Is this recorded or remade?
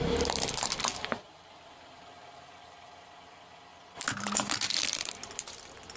remade